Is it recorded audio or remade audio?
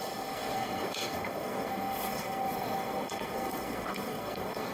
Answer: remade